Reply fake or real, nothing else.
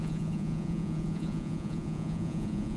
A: fake